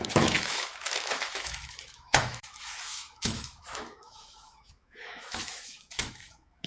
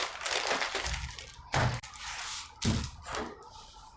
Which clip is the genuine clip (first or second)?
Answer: second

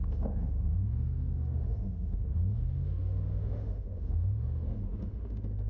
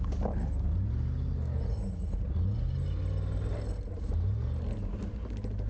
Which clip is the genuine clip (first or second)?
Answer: second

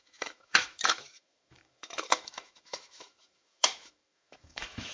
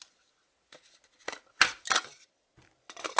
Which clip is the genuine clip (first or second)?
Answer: second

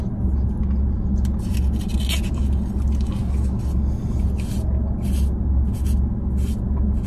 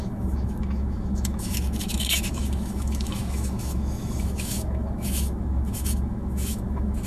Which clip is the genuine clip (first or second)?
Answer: first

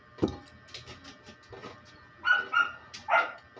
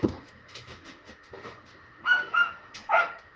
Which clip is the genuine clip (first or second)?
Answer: first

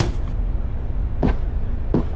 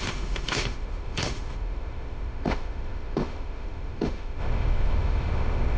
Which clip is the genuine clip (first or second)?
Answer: first